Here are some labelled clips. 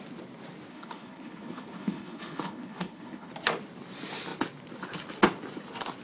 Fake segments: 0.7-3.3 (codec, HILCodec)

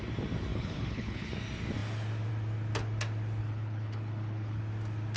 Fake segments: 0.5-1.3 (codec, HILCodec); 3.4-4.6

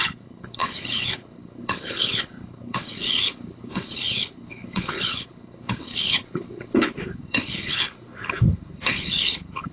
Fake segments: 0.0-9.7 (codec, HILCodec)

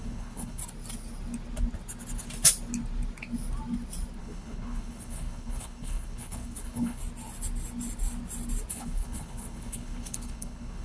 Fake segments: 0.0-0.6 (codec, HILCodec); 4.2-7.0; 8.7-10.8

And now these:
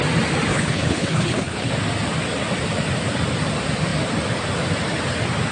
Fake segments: 0.5-1.7 (codec, HILCodec)

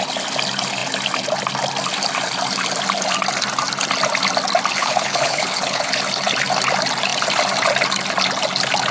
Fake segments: 4.8-5.9 (codec, HILCodec)

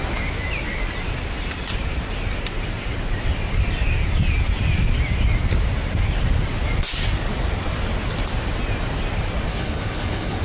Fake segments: 9.5-10.4 (codec, HILCodec)